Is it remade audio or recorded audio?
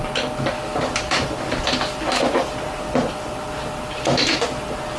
recorded